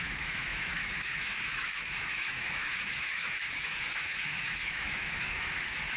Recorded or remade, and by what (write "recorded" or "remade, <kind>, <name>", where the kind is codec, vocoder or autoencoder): remade, autoencoder, DAC-VAE